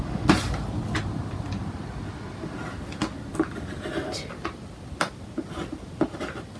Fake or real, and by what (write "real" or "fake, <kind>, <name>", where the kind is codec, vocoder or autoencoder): real